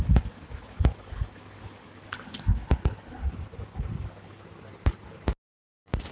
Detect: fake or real real